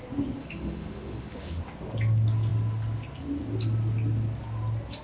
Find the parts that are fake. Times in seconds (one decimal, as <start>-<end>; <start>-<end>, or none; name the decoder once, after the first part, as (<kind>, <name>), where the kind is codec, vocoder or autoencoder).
0.4-1.6 (autoencoder, DAC-VAE)